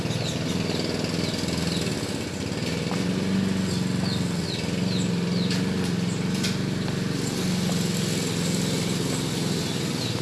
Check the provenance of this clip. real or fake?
real